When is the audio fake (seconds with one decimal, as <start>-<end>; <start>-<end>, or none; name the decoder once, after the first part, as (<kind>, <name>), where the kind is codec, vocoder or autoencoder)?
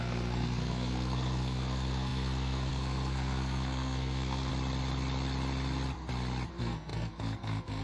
0.0-4.5 (codec, SNAC); 6.5-7.8